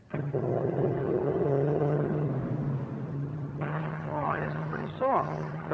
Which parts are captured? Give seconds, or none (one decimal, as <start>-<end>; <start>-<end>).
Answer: 2.3-3.1